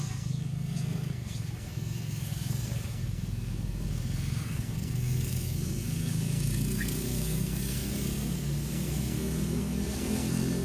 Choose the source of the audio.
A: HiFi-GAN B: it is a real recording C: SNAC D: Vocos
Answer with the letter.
C